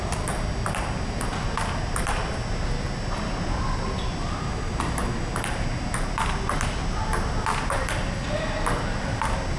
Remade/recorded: recorded